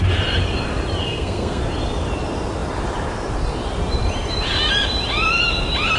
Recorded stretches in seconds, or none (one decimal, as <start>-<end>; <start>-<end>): 0.0-1.0; 1.6-6.0